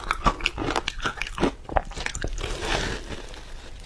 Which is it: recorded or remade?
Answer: recorded